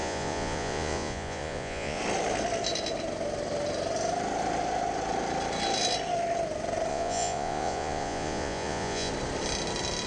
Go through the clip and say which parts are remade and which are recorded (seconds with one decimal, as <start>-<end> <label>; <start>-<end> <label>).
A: 0.0-2.0 remade; 2.0-6.9 recorded; 6.9-9.1 remade; 9.1-10.1 recorded